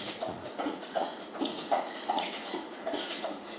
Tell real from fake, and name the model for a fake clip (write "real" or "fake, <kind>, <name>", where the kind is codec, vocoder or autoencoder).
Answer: fake, vocoder, Vocos